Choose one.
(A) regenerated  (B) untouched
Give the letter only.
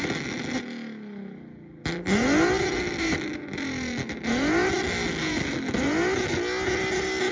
B